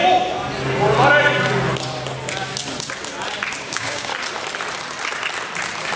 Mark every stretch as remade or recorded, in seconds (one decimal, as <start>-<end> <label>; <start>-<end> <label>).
0.0-3.6 recorded; 3.6-4.1 remade; 4.1-6.0 recorded